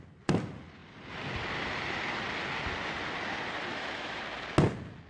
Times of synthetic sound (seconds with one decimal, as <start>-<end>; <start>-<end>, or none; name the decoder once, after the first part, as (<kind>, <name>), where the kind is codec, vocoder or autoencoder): 3.7-4.2 (autoencoder, DAC-VAE)